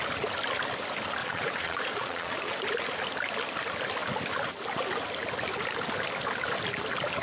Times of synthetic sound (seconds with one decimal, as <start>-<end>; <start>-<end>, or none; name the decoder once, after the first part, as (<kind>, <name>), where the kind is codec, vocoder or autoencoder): 1.2-2.6 (vocoder, Vocos)